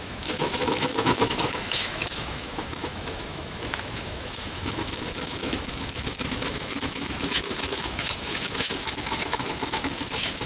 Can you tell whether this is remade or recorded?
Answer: remade